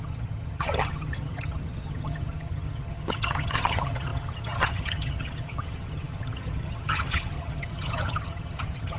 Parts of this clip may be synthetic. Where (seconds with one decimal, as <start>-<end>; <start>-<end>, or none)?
0.0-9.0